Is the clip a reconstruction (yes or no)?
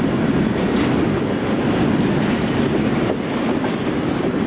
no